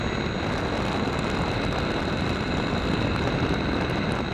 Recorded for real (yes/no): yes